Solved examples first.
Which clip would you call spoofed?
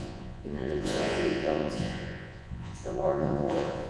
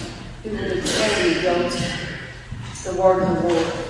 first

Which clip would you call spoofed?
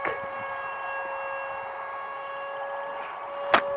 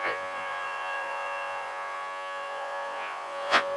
second